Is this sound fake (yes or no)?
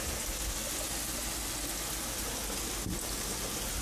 no